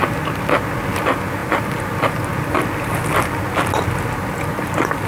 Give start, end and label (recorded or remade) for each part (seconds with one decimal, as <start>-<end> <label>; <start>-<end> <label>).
0.0-5.1 recorded